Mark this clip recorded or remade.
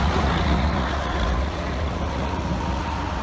remade